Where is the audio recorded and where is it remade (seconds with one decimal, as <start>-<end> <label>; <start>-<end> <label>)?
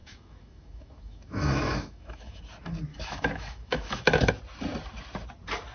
0.0-2.4 remade; 2.4-2.9 recorded; 2.9-4.3 remade; 4.3-5.7 recorded